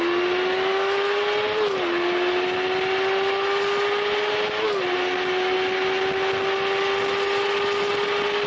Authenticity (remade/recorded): recorded